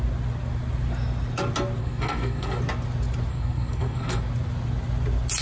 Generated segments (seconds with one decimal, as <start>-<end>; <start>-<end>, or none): 1.8-2.6; 3.3-4.2